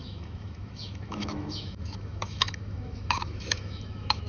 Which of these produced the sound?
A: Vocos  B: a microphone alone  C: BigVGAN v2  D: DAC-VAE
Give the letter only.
D